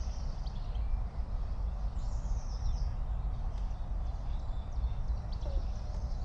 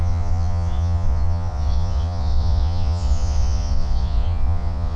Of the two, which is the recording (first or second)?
first